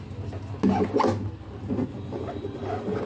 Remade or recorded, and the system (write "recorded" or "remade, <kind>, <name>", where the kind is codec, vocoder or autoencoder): recorded